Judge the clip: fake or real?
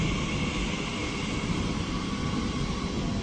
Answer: real